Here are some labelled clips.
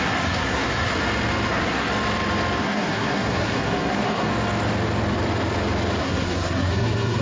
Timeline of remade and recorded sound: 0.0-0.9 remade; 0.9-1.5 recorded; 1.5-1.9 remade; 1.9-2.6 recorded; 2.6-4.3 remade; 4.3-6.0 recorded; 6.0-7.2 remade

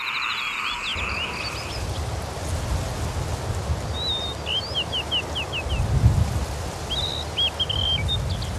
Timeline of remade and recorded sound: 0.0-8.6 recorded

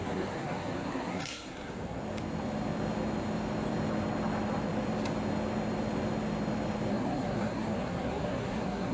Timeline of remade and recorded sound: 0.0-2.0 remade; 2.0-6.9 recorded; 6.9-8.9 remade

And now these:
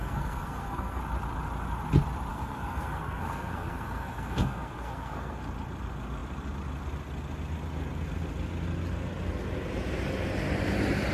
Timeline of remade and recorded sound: 0.0-1.0 remade; 1.0-2.3 recorded; 2.3-5.4 remade; 5.4-11.1 recorded

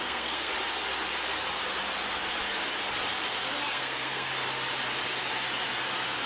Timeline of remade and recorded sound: 0.0-0.5 remade; 0.5-3.7 recorded; 3.7-4.3 remade; 4.3-6.3 recorded

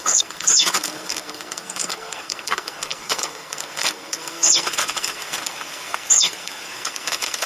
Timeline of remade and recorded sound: 0.0-7.5 remade

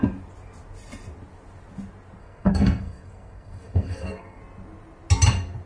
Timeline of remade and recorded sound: 0.0-2.2 recorded; 2.2-4.4 remade; 4.4-5.7 recorded